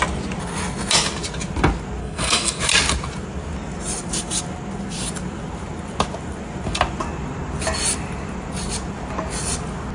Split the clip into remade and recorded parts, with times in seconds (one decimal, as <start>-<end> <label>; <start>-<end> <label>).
0.0-2.0 recorded; 2.0-2.6 remade; 2.6-9.9 recorded